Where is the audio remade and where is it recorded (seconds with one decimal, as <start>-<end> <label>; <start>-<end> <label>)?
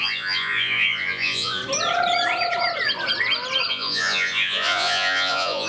0.0-1.6 remade; 1.6-3.7 recorded; 3.7-5.7 remade